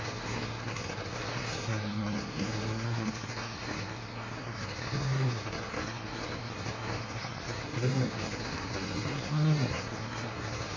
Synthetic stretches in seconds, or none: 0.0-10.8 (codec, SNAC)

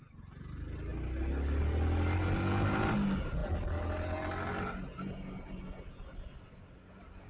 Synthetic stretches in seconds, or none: 0.9-1.6 (vocoder, BigVGAN v2)

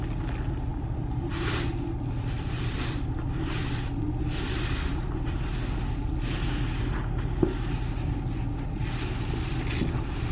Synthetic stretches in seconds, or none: none

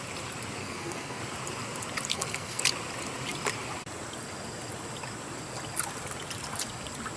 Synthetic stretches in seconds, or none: 0.6-1.2 (codec, SNAC); 2.1-2.6